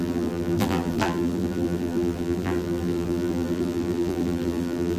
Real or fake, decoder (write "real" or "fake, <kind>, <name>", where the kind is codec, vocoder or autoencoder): fake, vocoder, BigVGAN v2